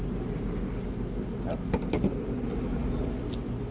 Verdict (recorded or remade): recorded